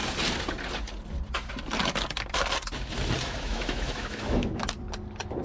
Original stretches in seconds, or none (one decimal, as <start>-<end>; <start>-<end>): 0.0-3.2; 4.6-5.4

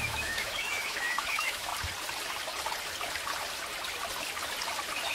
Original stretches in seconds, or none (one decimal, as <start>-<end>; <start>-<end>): 1.7-5.1

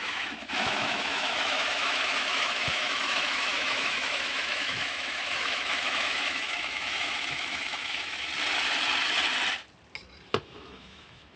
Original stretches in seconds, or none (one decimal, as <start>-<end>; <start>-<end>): 8.3-10.6

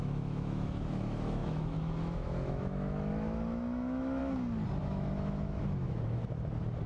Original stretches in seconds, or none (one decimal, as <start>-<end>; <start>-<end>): 4.2-4.8; 6.2-6.9

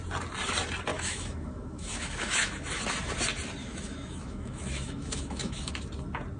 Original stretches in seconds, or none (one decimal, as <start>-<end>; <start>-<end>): 0.0-0.9; 2.8-3.6; 5.7-6.4

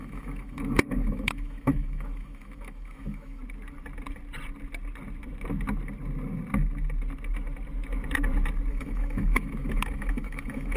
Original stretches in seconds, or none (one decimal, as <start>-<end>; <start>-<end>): 3.4-8.7

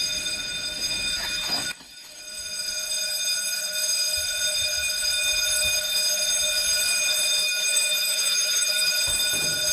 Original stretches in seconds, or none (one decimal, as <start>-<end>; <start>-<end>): 0.0-1.1; 2.2-7.4; 8.9-9.7